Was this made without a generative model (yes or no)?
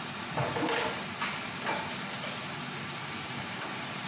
yes